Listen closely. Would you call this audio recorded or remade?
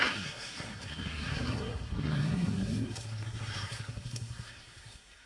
remade